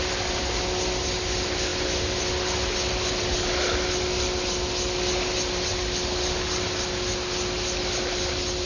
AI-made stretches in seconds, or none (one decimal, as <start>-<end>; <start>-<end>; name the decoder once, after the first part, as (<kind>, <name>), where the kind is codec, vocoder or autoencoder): none